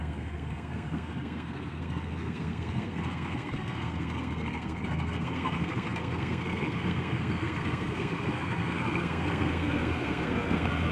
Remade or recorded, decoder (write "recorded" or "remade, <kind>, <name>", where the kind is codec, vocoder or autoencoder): remade, codec, SNAC